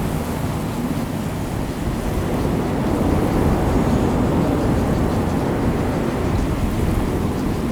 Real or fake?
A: real